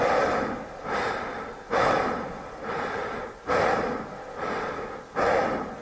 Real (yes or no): yes